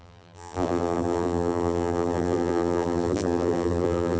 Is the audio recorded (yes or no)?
no